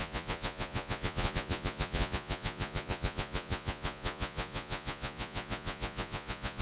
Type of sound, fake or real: fake